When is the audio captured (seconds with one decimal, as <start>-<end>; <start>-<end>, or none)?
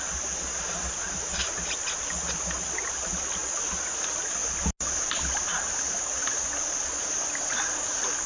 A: 0.0-8.3